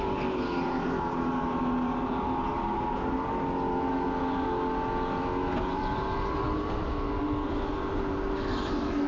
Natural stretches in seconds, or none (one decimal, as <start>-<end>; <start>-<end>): 0.0-5.7; 6.4-9.1